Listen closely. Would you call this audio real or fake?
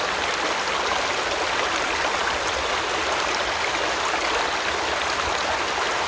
real